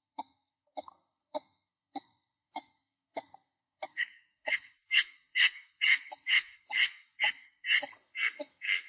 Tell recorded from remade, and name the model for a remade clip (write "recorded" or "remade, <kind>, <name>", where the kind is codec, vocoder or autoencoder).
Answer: remade, codec, SNAC